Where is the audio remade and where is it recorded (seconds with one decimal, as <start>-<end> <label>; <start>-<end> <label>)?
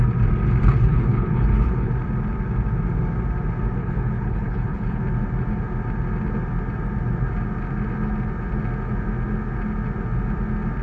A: 0.0-0.8 recorded; 0.8-1.9 remade; 1.9-3.8 recorded; 3.8-5.0 remade; 5.0-10.8 recorded